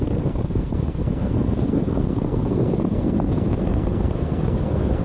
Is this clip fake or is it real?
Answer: fake